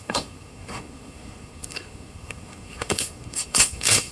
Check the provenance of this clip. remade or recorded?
remade